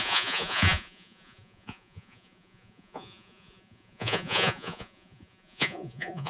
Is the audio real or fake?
fake